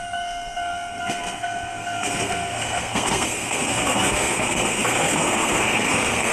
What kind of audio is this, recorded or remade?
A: remade